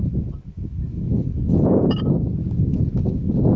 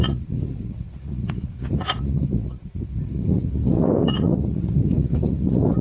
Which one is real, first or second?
first